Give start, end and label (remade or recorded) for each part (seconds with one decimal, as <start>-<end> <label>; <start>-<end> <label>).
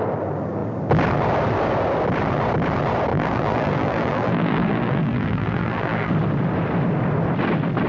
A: 0.0-3.1 recorded; 3.1-6.1 remade; 6.1-7.9 recorded